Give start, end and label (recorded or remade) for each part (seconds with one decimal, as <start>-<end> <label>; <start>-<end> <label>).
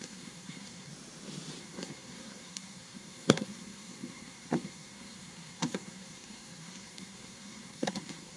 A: 0.0-0.9 remade; 0.9-1.6 recorded; 1.6-8.4 remade